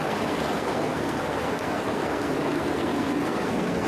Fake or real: fake